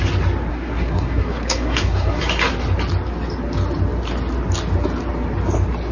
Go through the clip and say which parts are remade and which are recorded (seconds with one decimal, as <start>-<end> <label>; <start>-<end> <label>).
0.0-0.5 recorded; 0.5-2.2 remade; 2.2-5.9 recorded